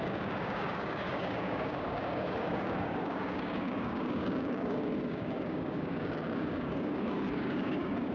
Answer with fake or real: fake